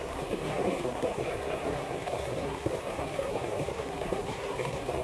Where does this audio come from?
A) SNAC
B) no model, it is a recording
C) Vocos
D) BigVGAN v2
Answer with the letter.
A